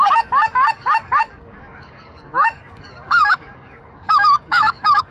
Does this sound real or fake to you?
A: fake